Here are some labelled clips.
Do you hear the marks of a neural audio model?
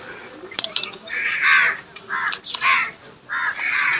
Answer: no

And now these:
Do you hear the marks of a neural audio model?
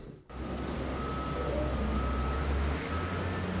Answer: no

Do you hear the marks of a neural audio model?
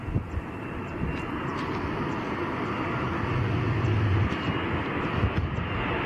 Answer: no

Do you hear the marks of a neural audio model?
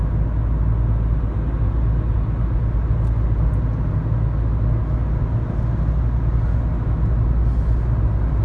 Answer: no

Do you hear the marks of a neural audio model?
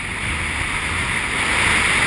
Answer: no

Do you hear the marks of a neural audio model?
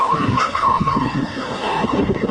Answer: yes